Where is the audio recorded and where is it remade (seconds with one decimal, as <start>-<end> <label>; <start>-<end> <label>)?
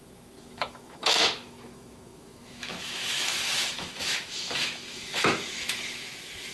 0.0-6.5 remade